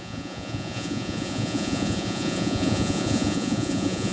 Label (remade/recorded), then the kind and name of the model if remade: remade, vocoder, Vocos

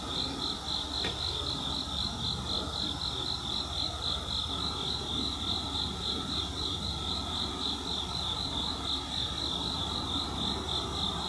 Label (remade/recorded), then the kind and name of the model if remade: recorded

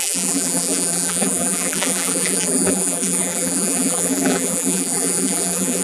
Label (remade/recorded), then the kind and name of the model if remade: remade, vocoder, BigVGAN v2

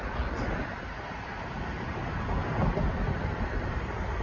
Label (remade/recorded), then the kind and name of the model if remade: recorded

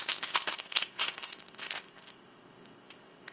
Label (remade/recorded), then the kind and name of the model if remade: remade, codec, ZipCodec